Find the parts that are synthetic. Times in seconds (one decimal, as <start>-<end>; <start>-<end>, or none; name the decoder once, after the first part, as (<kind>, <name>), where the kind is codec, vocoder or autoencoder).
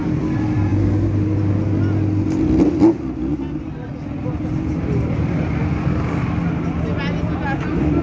none